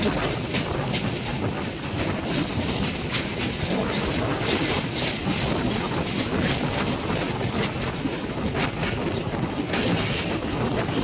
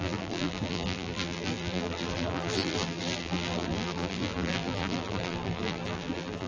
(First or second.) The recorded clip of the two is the first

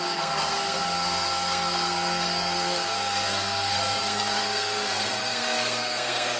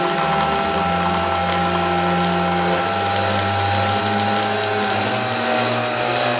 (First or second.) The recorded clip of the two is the second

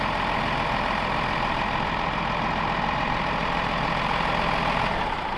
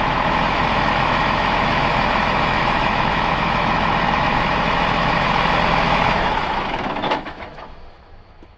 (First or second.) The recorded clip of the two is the first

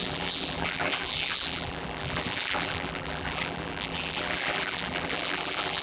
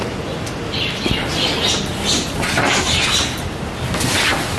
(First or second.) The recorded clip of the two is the second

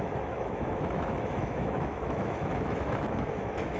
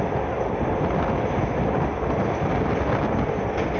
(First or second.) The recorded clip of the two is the second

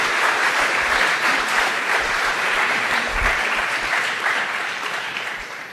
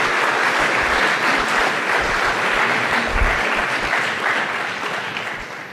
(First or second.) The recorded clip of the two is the second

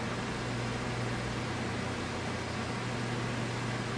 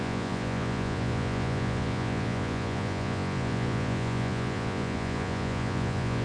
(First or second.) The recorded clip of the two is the first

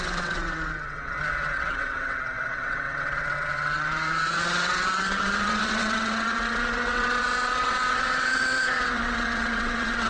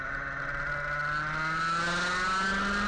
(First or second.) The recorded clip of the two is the second